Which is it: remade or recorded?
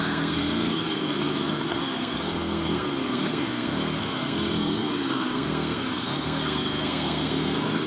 remade